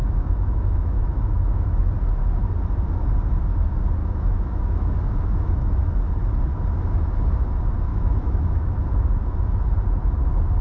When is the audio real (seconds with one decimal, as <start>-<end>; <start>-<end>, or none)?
1.8-4.0; 5.7-7.9; 8.8-10.6